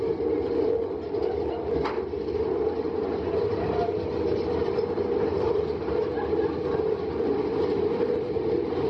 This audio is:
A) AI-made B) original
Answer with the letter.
B